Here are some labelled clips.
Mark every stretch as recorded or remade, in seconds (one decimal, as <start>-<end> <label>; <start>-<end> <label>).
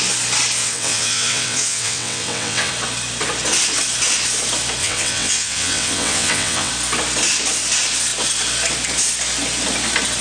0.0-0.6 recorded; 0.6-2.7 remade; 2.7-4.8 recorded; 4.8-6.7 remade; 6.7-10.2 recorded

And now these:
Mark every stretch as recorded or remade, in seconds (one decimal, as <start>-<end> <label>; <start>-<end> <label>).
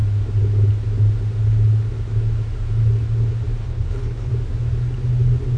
0.0-3.6 recorded; 3.6-4.3 remade; 4.3-5.6 recorded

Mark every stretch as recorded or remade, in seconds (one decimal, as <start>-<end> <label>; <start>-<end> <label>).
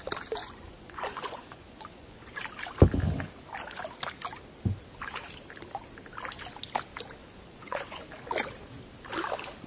0.0-0.4 recorded; 0.4-2.4 remade; 2.4-7.2 recorded; 7.2-8.0 remade; 8.0-9.7 recorded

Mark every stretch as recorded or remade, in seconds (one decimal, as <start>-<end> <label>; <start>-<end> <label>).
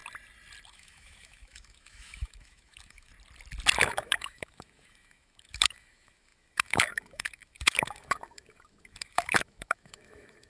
0.0-0.7 recorded; 0.7-3.1 remade; 3.1-3.8 recorded; 3.8-10.5 remade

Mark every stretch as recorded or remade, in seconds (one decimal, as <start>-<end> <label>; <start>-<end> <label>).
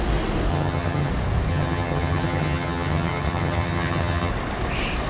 0.0-0.5 recorded; 0.5-1.1 remade; 1.1-1.5 recorded; 1.5-4.3 remade; 4.3-5.1 recorded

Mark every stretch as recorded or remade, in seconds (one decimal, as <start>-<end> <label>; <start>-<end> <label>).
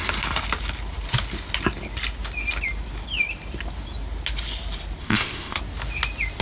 0.0-5.0 recorded; 5.0-5.6 remade; 5.6-6.4 recorded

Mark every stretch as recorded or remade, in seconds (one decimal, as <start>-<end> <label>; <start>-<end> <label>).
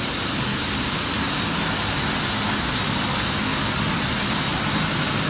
0.0-0.5 recorded; 0.5-1.2 remade; 1.2-3.5 recorded; 3.5-4.5 remade; 4.5-5.3 recorded